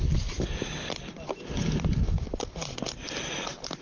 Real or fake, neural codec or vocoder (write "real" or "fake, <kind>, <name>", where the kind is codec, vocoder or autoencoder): real